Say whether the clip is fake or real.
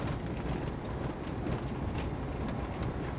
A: real